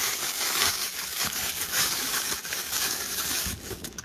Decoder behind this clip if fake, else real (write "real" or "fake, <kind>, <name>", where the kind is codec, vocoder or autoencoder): fake, codec, DAC